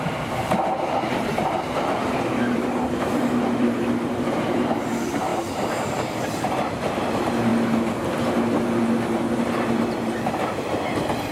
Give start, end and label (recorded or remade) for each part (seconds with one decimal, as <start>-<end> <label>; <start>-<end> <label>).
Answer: 0.0-7.5 remade; 7.5-9.7 recorded; 9.7-11.3 remade